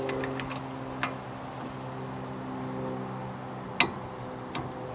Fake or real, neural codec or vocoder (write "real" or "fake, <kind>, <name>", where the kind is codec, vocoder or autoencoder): real